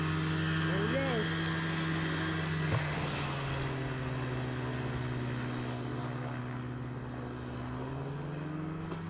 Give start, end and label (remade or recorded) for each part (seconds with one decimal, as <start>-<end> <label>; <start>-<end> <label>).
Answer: 0.0-9.1 recorded